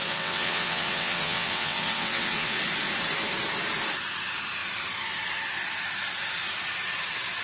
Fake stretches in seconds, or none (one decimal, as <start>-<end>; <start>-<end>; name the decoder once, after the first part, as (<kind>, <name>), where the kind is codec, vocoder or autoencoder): 0.0-2.6 (vocoder, WaveNeXt)